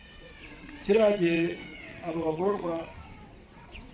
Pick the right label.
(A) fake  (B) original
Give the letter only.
A